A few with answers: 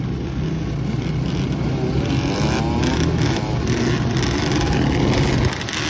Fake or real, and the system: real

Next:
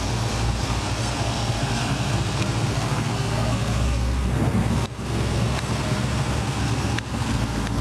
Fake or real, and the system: fake, codec, SNAC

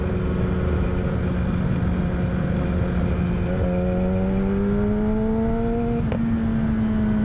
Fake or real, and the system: real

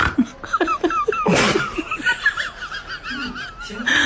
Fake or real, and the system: real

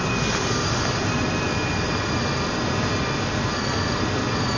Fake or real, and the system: real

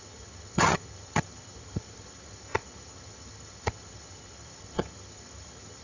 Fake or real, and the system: fake, vocoder, HiFi-GAN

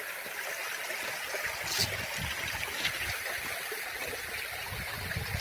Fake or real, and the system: real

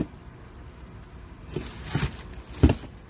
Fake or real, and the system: real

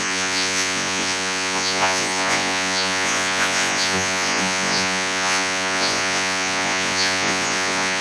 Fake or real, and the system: fake, vocoder, Vocos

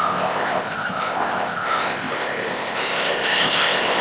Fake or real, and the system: fake, codec, ZipCodec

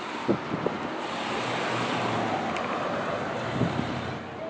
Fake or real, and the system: real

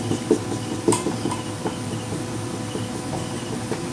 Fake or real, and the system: real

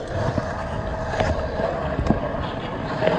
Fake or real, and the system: real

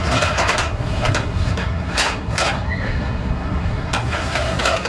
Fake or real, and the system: fake, codec, SNAC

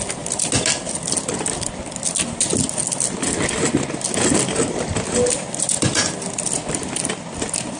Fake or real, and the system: real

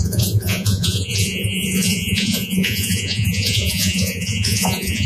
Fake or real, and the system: fake, vocoder, Vocos